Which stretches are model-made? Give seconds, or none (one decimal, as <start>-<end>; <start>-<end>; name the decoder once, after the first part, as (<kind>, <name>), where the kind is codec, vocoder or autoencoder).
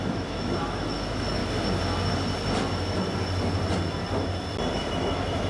0.0-1.4 (autoencoder, DAC-VAE); 4.7-5.5